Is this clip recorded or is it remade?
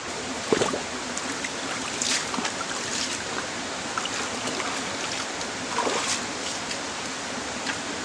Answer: recorded